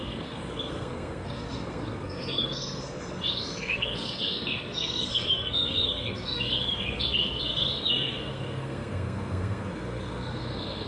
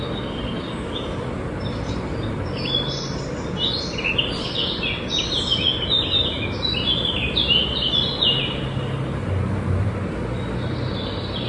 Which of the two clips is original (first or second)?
second